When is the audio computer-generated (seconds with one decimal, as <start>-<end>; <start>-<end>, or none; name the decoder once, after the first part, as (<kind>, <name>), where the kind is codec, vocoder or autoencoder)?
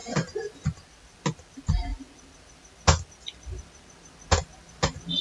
none